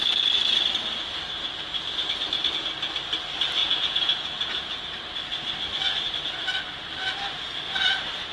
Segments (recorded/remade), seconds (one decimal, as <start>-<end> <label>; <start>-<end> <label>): 0.0-3.6 recorded; 3.6-5.0 remade; 5.0-8.3 recorded